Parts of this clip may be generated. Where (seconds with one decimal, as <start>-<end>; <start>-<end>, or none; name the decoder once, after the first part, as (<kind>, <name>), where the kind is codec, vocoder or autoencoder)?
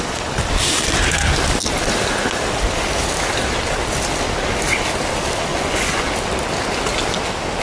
5.5-6.1 (vocoder, Vocos)